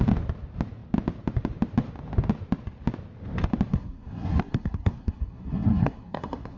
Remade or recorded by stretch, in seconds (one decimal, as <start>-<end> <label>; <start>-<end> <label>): 0.0-3.7 recorded; 3.7-6.6 remade